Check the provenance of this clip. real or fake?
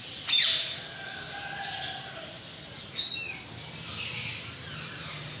real